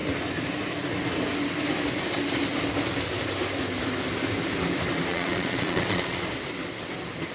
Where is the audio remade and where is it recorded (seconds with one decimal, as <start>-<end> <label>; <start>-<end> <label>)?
0.0-5.1 recorded; 5.1-6.2 remade; 6.2-7.3 recorded